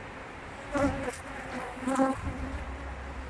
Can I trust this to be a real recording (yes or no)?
yes